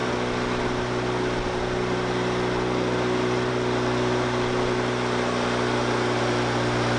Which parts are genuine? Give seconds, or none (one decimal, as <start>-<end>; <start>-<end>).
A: 0.0-7.0